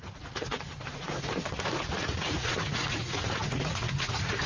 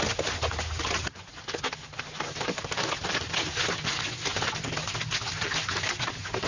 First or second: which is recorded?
second